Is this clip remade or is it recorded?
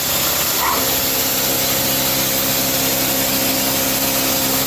recorded